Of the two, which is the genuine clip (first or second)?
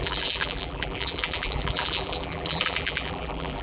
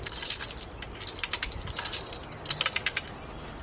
second